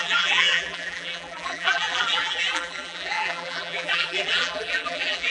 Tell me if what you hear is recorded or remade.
remade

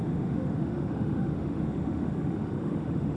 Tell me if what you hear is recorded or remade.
remade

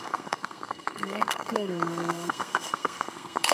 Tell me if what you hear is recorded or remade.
remade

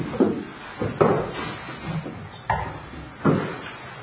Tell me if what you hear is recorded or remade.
recorded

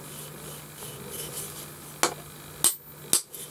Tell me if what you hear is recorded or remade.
recorded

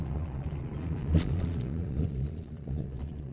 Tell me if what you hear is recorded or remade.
remade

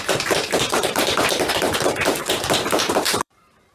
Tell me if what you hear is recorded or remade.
remade